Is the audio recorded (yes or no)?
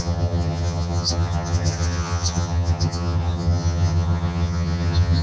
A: no